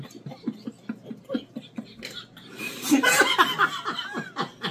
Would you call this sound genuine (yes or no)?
yes